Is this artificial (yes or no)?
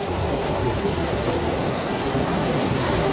yes